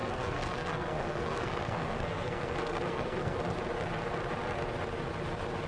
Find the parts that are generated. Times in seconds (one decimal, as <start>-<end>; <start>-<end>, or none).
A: 0.0-3.4